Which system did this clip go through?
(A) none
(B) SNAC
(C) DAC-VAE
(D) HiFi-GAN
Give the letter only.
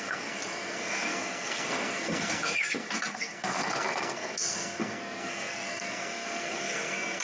B